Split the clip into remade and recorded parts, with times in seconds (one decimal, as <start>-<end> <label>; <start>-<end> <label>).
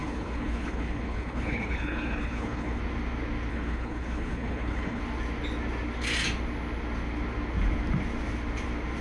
0.0-2.8 remade; 2.8-3.5 recorded; 3.5-5.0 remade; 5.0-9.0 recorded